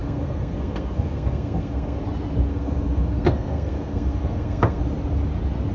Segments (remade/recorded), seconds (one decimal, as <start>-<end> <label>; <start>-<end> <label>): 0.0-2.0 remade; 2.0-2.5 recorded; 2.5-4.8 remade; 4.8-5.7 recorded

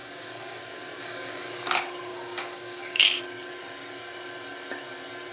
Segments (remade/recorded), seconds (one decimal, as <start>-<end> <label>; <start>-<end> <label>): 0.0-0.6 remade; 0.6-1.0 recorded; 1.0-1.7 remade; 1.7-2.1 recorded; 2.1-3.2 remade; 3.2-5.3 recorded

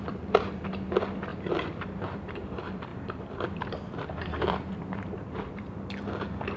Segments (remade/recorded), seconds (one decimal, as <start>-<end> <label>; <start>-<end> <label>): 0.0-1.3 recorded; 1.3-2.5 remade; 2.5-2.9 recorded; 2.9-5.5 remade; 5.5-6.6 recorded

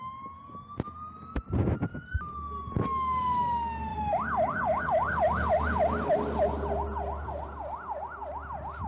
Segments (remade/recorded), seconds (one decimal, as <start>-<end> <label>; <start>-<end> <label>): 0.0-3.9 recorded; 3.9-4.8 remade; 4.8-8.9 recorded

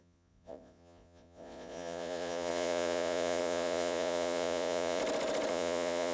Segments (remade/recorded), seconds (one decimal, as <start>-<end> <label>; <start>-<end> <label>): 0.0-5.0 remade; 5.0-5.5 recorded; 5.5-6.1 remade

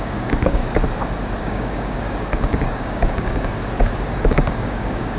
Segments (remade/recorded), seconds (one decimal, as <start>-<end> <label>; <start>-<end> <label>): 0.0-0.6 remade; 0.6-1.4 recorded; 1.4-3.6 remade; 3.6-4.1 recorded; 4.1-5.2 remade

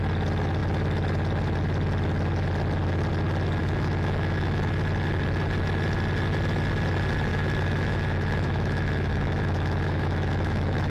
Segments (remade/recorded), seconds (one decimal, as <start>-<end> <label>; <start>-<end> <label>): 0.0-3.6 recorded; 3.6-4.7 remade; 4.7-7.3 recorded; 7.3-10.9 remade